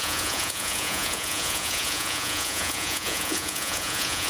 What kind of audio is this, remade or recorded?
remade